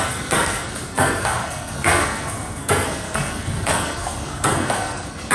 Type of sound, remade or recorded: remade